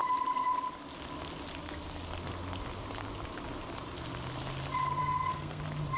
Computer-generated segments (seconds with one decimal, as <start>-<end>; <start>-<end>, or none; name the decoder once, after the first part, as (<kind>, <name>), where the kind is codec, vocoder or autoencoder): 5.0-5.6 (codec, SNAC)